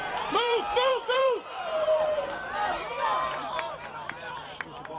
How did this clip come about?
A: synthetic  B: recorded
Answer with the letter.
A